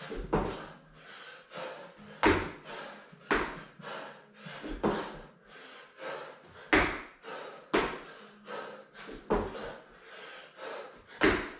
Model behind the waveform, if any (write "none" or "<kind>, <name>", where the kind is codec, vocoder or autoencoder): none